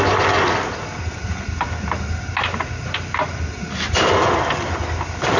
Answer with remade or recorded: recorded